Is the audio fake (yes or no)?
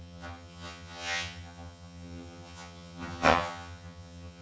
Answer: yes